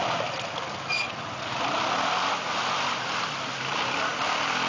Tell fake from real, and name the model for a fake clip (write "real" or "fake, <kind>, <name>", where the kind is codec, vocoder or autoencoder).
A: real